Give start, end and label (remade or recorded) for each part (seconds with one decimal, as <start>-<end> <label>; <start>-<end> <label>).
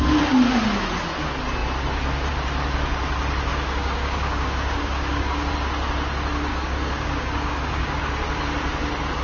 0.0-3.5 recorded; 3.5-5.5 remade; 5.5-6.5 recorded; 6.5-8.0 remade; 8.0-9.2 recorded